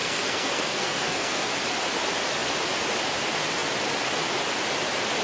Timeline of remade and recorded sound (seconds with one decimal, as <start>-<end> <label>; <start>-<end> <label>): 0.0-1.5 remade; 1.5-5.2 recorded